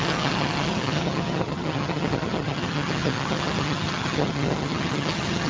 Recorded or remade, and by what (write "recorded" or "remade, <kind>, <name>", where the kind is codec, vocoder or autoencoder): remade, vocoder, HiFi-GAN